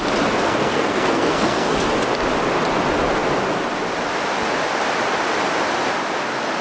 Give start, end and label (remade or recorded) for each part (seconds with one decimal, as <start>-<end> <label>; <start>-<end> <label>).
0.0-0.4 recorded; 0.4-1.8 remade; 1.8-6.6 recorded